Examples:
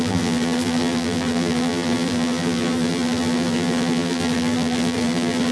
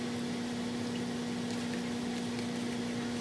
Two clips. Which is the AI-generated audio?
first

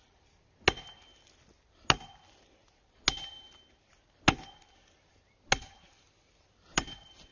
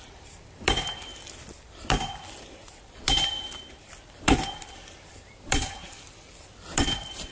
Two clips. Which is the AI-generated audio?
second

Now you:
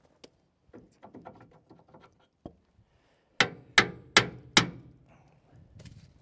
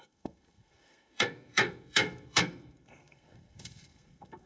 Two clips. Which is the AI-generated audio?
second